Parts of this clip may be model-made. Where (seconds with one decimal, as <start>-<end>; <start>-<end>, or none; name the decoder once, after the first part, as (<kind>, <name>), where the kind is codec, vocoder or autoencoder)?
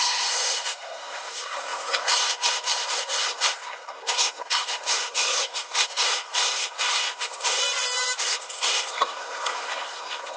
0.0-7.6 (codec, SNAC); 8.2-10.4